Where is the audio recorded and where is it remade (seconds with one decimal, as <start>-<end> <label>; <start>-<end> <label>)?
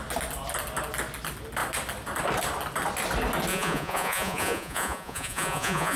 0.0-3.5 recorded; 3.5-6.0 remade